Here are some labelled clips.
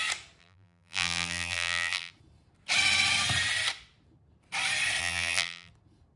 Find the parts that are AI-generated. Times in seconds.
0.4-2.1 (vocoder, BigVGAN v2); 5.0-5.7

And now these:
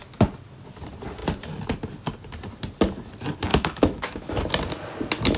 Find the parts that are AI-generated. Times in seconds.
3.5-4.4 (autoencoder, DAC-VAE)

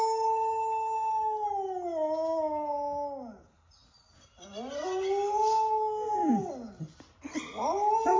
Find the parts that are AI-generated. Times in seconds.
none

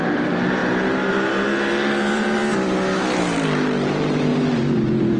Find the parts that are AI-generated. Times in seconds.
0.0-2.4 (vocoder, BigVGAN v2); 3.2-4.3

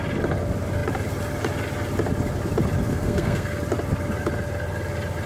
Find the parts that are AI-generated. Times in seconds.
2.9-3.6 (codec, SNAC)